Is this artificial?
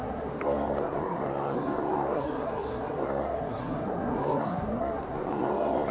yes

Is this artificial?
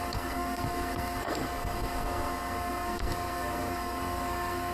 yes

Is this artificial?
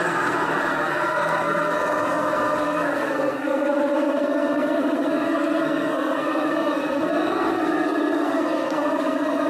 yes